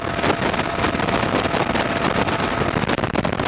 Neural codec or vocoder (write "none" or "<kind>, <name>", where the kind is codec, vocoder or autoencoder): none